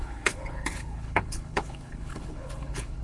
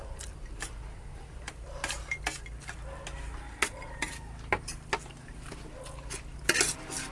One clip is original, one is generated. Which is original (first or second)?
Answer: second